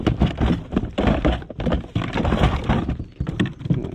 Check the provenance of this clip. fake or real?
real